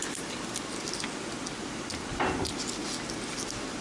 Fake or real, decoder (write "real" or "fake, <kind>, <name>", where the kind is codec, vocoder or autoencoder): real